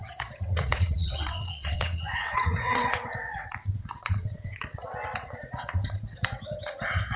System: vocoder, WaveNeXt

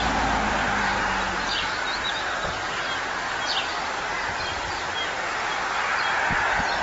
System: none